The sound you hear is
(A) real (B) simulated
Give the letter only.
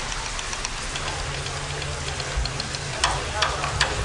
A